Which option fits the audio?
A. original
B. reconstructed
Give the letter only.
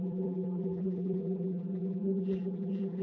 B